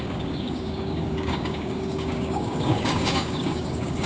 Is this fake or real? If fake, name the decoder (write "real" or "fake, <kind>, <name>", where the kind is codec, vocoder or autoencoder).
fake, codec, DAC